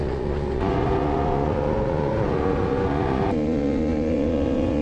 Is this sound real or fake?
fake